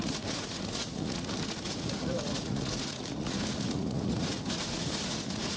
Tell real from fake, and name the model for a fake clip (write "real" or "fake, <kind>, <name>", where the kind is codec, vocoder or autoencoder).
fake, vocoder, Vocos